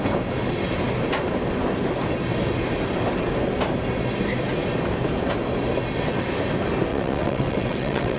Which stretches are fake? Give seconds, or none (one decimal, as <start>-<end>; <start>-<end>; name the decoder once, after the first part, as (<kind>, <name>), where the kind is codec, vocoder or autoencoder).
6.9-8.2 (vocoder, WaveNeXt)